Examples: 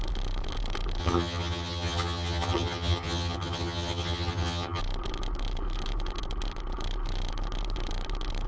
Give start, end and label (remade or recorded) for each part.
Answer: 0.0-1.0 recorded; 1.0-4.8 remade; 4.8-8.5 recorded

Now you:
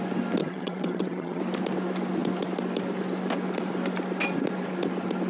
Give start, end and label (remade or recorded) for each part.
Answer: 0.0-0.4 recorded; 0.4-1.4 remade; 1.4-5.3 recorded

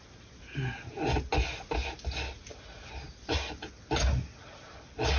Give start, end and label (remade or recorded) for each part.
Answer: 0.0-5.2 recorded

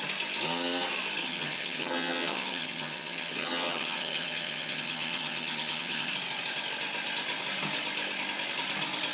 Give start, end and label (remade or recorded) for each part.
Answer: 0.0-1.2 recorded; 1.2-6.1 remade; 6.1-9.1 recorded